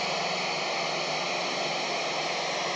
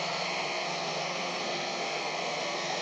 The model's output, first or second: second